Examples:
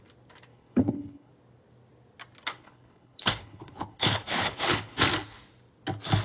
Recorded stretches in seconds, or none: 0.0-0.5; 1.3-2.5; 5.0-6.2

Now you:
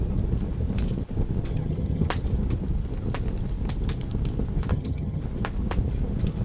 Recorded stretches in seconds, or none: 0.0-1.5; 2.1-4.7; 5.2-6.4

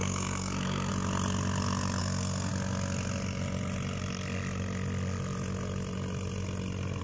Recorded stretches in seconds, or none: 0.9-2.0; 2.5-7.0

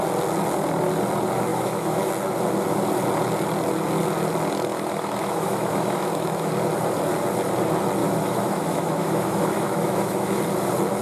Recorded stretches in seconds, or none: 0.0-1.5; 2.1-4.7; 6.5-8.0; 10.4-11.0

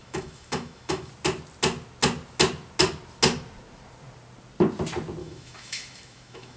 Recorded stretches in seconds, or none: 1.1-5.2

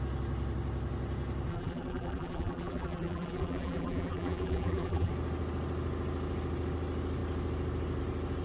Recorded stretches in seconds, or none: 0.0-1.5; 5.1-8.4